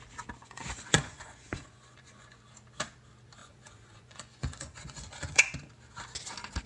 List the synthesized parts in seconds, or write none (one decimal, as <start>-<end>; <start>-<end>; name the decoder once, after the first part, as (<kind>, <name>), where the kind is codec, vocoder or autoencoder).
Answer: 0.4-2.4 (vocoder, Vocos); 3.4-5.5